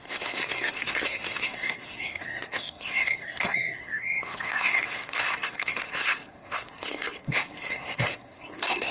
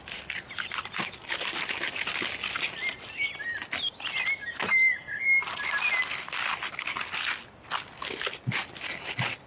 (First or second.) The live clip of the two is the second